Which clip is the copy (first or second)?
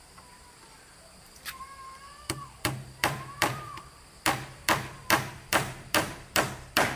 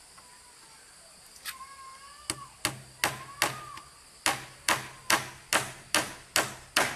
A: first